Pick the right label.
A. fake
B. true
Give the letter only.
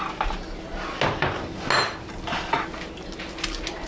B